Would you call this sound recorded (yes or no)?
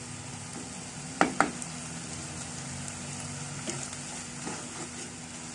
yes